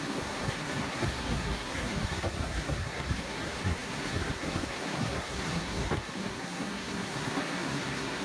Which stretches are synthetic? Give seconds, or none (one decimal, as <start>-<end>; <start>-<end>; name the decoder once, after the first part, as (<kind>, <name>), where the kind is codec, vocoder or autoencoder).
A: 0.0-8.2 (codec, SNAC)